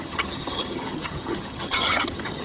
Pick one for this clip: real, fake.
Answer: fake